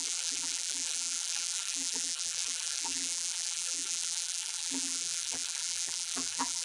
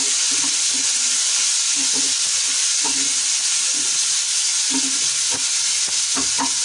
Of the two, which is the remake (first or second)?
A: first